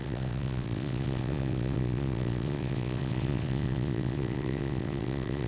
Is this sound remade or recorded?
remade